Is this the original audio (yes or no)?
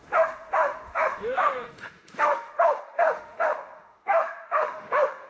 no